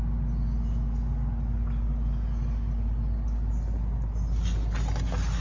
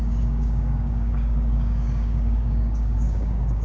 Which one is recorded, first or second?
first